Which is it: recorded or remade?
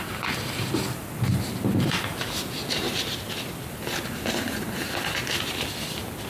remade